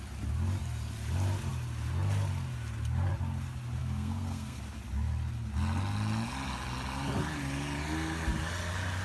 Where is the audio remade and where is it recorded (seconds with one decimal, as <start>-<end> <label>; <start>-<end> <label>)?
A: 0.0-3.8 recorded; 3.8-4.6 remade; 4.6-9.0 recorded